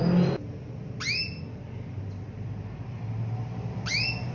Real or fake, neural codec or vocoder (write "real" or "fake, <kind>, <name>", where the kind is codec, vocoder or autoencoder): real